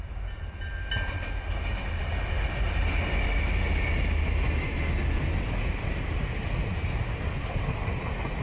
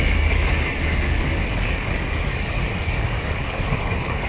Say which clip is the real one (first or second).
first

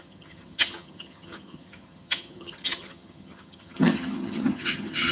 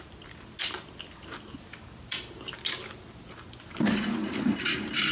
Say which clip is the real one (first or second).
second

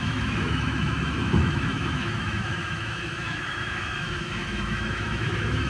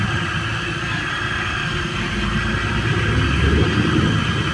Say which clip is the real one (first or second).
second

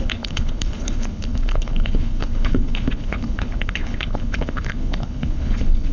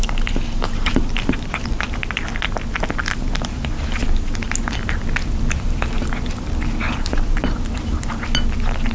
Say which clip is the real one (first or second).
second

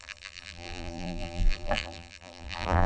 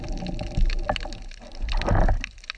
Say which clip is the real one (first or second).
second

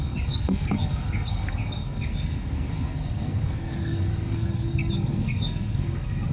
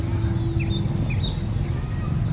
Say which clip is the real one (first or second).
second